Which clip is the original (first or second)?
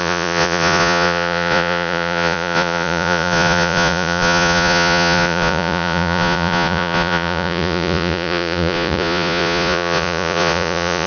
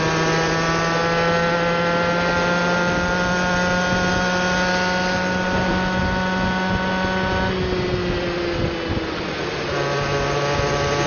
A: second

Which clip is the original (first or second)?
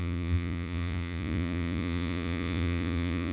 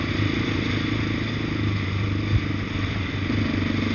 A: second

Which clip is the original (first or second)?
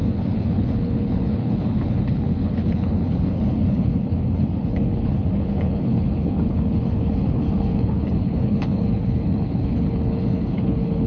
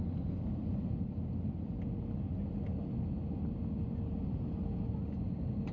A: second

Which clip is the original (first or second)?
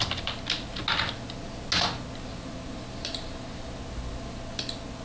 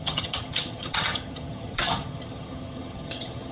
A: first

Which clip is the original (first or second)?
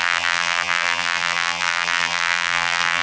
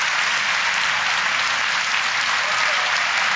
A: second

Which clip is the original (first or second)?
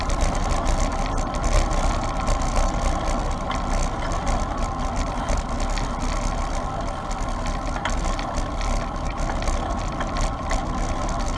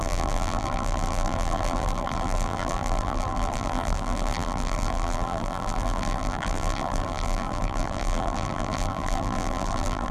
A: first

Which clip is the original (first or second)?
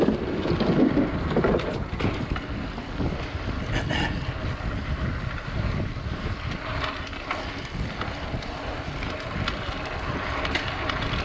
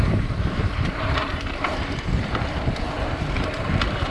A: first